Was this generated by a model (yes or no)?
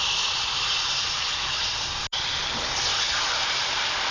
no